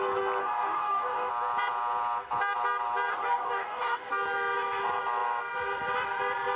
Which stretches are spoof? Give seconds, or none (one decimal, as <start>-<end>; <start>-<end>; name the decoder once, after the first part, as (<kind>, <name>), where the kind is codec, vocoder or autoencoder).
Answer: 0.4-1.3 (codec, DAC); 3.1-4.1